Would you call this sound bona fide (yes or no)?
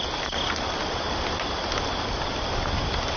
yes